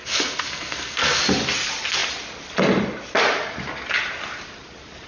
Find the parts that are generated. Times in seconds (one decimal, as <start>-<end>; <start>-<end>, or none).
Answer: 0.0-1.2